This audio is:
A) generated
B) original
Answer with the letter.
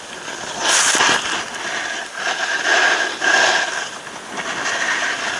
B